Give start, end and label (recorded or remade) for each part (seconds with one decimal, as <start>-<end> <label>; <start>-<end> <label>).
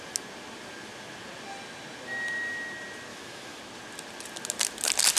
0.0-3.1 recorded; 3.1-3.6 remade; 3.6-5.2 recorded